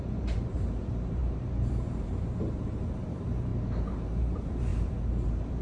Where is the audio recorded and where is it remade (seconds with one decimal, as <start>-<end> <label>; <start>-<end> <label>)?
0.0-3.5 remade; 3.5-4.2 recorded; 4.2-5.6 remade